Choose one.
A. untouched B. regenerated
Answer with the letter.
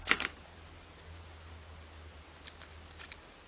A